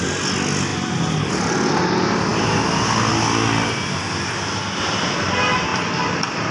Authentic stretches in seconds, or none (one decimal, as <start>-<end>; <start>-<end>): 0.0-6.5